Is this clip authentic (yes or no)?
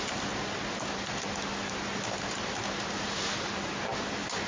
yes